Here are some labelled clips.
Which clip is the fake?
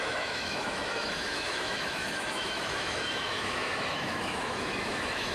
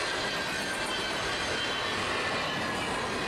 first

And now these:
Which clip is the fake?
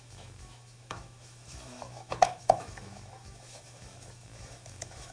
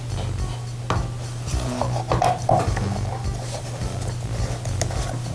first